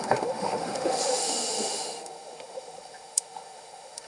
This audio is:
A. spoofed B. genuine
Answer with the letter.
A